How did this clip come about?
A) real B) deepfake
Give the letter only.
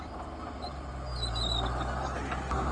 A